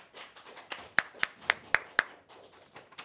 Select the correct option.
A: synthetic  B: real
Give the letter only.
B